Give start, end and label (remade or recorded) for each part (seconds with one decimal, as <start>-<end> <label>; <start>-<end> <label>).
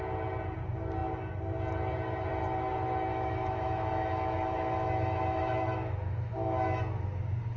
0.0-3.1 recorded; 3.1-6.8 remade; 6.8-7.6 recorded